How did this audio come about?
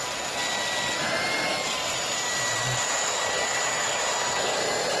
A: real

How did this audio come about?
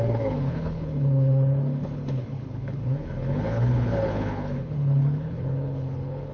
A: fake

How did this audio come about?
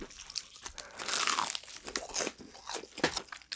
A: real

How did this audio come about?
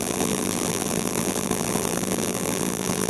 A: fake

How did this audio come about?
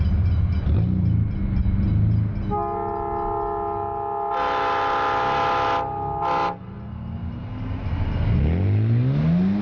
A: real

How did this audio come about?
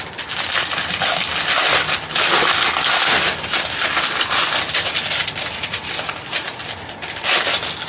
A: real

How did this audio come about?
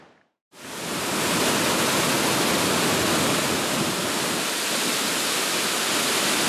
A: real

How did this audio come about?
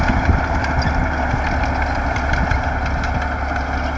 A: real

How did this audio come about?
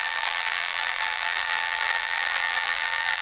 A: fake